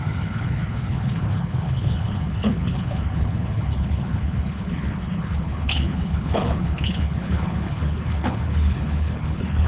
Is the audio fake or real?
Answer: fake